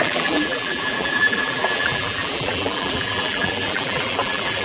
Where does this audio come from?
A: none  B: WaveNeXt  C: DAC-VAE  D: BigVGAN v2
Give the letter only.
D